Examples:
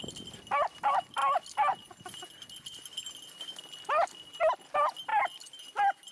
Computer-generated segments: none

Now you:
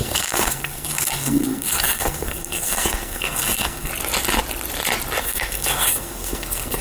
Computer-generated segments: 0.0-3.9 (codec, SNAC); 5.2-6.8

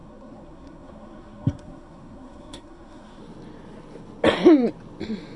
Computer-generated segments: 0.0-3.2 (codec, SNAC)

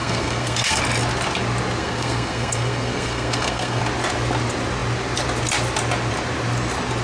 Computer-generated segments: 0.0-0.8 (codec, SNAC); 1.8-3.8

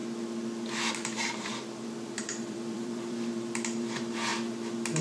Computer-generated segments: 0.9-1.5 (vocoder, BigVGAN v2); 2.2-4.3

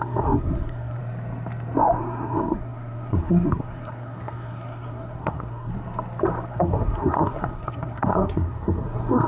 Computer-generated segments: 0.0-1.0 (codec, SNAC); 2.0-5.7; 6.5-9.3

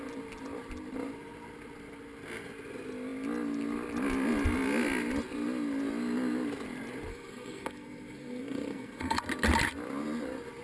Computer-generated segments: 7.1-9.2 (codec, SNAC)

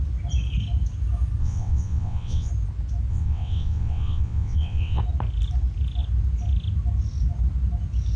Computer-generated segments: 1.4-2.5 (vocoder, WaveNeXt); 3.1-5.0